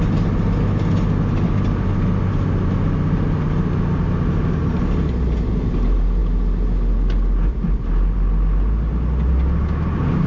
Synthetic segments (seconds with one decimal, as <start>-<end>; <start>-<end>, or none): none